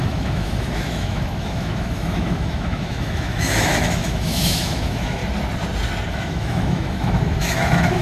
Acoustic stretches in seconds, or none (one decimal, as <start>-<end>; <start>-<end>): 5.2-6.1